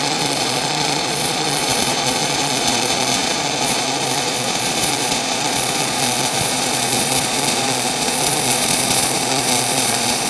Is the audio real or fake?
fake